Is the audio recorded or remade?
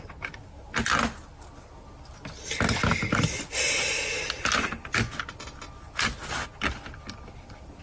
recorded